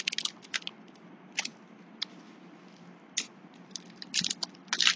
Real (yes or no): yes